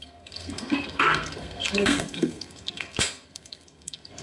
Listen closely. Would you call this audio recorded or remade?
remade